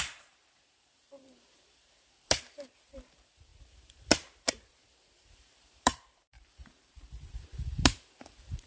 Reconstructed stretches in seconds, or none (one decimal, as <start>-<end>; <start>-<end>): 0.0-8.7